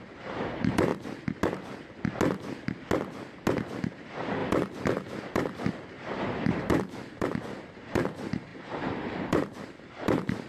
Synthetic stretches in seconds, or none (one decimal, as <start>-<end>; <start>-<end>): 0.0-0.9; 3.8-10.5